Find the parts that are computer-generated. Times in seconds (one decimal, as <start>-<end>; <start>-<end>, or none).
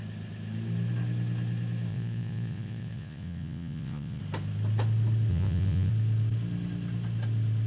1.9-4.2; 5.3-5.9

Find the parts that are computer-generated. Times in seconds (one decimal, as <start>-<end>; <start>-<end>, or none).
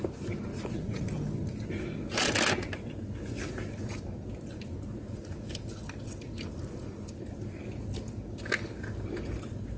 0.5-1.1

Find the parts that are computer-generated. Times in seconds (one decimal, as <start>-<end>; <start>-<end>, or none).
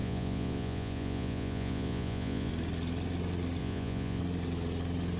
0.0-2.5; 3.6-4.2